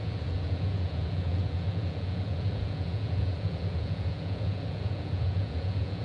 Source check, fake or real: fake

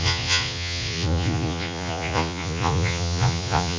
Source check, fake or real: fake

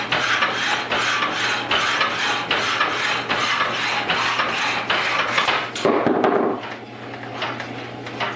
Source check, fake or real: real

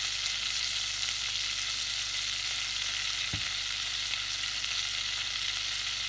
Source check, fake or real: real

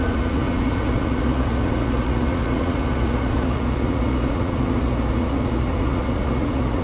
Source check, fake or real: fake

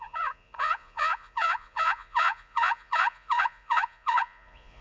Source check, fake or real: fake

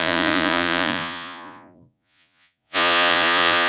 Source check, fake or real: fake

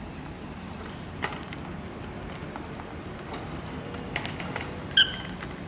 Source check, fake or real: real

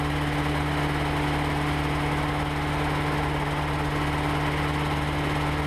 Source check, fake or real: real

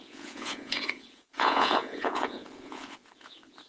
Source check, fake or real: fake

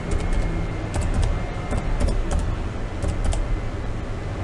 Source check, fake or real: real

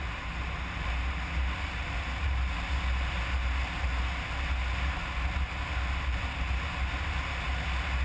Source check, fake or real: real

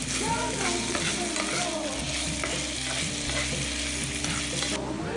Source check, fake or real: real